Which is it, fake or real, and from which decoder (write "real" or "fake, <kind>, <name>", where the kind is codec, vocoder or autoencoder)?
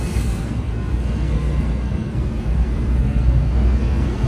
fake, codec, SNAC